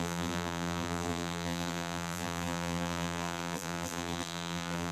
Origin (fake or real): fake